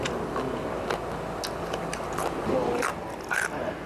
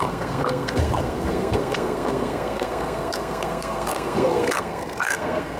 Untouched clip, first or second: first